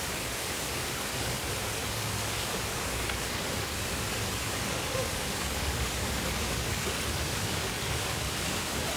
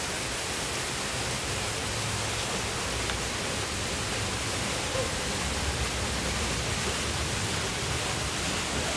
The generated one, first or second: first